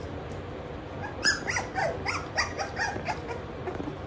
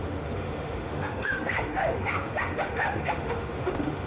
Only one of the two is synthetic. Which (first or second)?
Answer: second